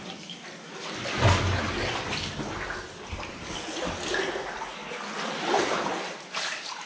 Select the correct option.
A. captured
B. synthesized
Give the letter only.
A